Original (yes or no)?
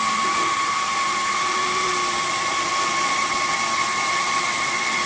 no